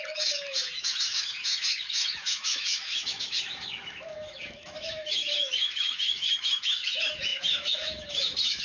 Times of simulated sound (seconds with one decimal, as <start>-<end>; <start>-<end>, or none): 0.0-8.6